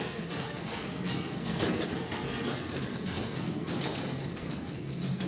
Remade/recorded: remade